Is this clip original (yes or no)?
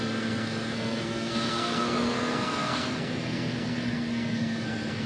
no